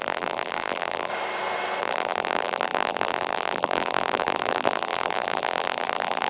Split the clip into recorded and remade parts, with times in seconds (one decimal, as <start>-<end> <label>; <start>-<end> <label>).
0.0-1.1 remade; 1.1-1.8 recorded; 1.8-6.3 remade

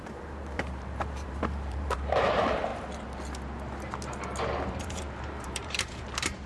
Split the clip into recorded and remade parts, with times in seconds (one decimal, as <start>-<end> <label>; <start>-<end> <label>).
0.0-2.7 remade; 2.7-4.7 recorded; 4.7-6.5 remade

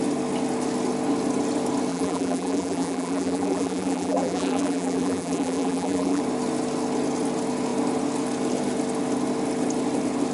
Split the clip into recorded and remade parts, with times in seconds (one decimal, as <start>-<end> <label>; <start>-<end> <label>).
0.0-1.9 recorded; 1.9-6.2 remade; 6.2-10.3 recorded

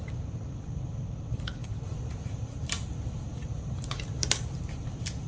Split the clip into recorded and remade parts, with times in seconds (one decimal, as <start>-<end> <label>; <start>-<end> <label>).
0.0-5.3 remade

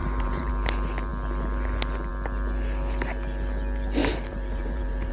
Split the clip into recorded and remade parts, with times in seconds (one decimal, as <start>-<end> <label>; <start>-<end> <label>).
0.0-0.5 remade; 0.5-4.0 recorded; 4.0-5.1 remade

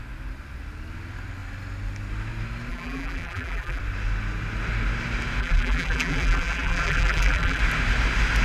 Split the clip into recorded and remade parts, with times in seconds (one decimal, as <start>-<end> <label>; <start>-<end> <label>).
0.0-2.7 recorded; 2.7-3.8 remade; 3.8-5.4 recorded; 5.4-7.6 remade; 7.6-8.4 recorded

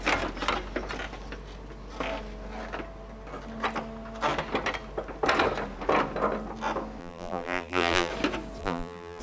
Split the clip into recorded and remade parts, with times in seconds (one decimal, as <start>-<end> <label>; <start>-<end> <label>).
0.0-7.0 recorded; 7.0-8.1 remade; 8.1-8.6 recorded; 8.6-9.2 remade